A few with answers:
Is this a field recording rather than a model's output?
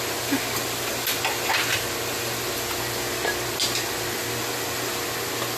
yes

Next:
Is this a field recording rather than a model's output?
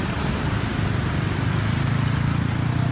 yes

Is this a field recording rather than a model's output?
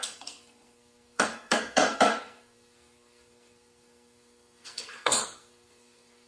no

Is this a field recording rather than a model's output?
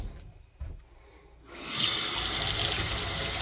yes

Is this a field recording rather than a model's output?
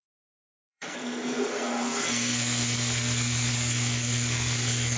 no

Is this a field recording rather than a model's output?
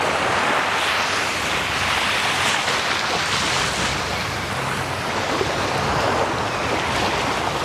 yes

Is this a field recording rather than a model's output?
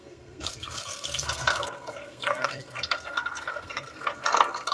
no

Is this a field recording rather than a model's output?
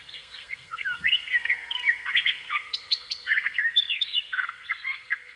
no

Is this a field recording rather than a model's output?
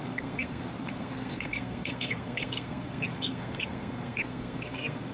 no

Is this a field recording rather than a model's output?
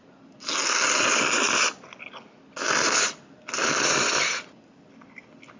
yes